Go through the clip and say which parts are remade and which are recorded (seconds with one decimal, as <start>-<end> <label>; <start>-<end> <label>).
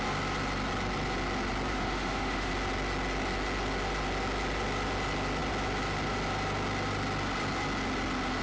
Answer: 0.0-1.7 recorded; 1.7-2.5 remade; 2.5-8.4 recorded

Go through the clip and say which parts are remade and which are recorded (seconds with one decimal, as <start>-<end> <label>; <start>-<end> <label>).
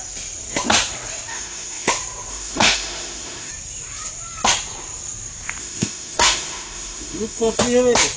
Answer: 0.0-1.3 recorded; 1.3-1.9 remade; 1.9-2.3 recorded; 2.3-3.5 remade; 3.5-5.6 recorded; 5.6-7.6 remade; 7.6-8.2 recorded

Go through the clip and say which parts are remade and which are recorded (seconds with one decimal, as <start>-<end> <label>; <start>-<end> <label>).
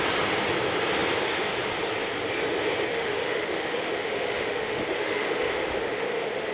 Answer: 0.0-2.9 recorded; 2.9-6.5 remade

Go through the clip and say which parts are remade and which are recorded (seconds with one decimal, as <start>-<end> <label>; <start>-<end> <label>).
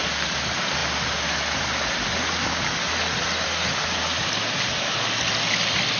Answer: 0.0-6.0 recorded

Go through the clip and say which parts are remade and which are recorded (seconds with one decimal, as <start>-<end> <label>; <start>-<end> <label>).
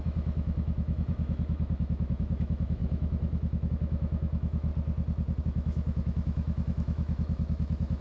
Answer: 0.0-4.7 remade; 4.7-5.4 recorded; 5.4-8.0 remade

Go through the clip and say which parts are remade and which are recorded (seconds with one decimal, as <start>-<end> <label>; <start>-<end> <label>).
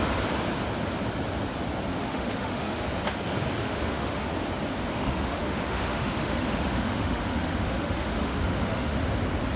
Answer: 0.0-1.9 recorded; 1.9-2.8 remade; 2.8-3.6 recorded; 3.6-4.3 remade; 4.3-4.9 recorded; 4.9-9.0 remade; 9.0-9.6 recorded